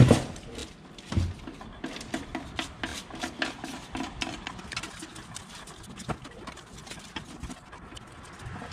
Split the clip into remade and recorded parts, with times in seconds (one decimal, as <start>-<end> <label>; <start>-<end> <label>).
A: 0.0-6.8 recorded; 6.8-7.3 remade; 7.3-8.7 recorded